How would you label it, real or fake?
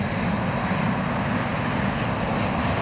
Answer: real